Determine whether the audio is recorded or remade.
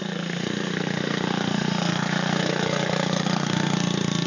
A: remade